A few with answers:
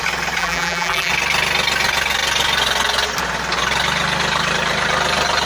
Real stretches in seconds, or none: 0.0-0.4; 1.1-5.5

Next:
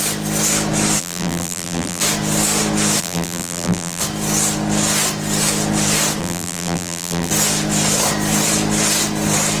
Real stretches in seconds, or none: 0.0-1.0; 2.0-3.0; 4.0-6.2; 7.3-9.6

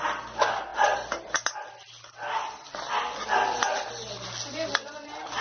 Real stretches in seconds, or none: 0.0-5.4

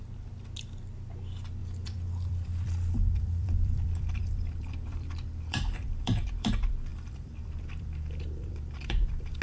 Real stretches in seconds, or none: 0.0-1.6; 6.5-6.9

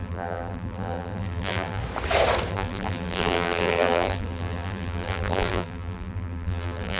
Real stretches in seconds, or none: 1.8-2.5

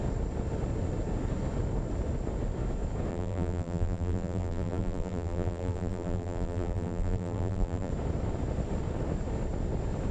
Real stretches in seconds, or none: 0.0-3.1; 7.9-10.1

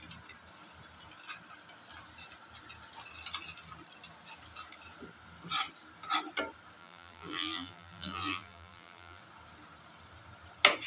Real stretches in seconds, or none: 0.0-6.8; 9.2-10.9